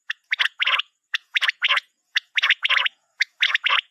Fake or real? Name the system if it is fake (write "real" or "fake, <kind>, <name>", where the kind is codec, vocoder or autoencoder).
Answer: fake, vocoder, Vocos